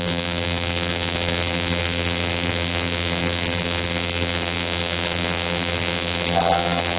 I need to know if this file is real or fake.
fake